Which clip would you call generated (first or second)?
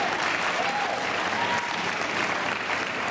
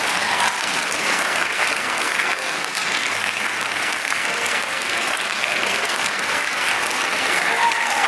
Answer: second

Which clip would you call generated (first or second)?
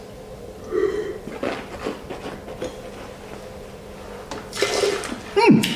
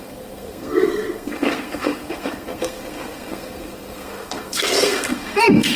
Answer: second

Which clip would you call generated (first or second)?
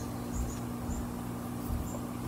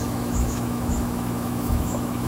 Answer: second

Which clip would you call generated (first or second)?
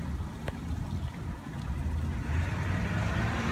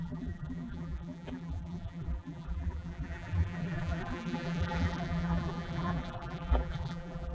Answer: second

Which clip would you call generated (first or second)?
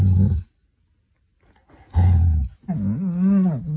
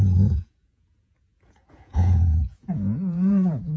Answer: second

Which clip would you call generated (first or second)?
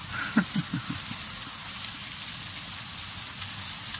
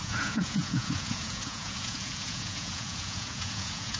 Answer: second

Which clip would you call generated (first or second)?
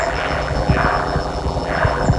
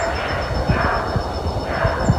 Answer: first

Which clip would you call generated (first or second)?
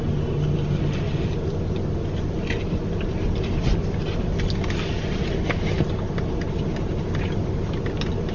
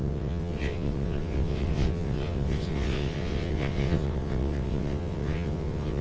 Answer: second